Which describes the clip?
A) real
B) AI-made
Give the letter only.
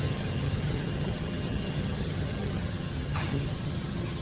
B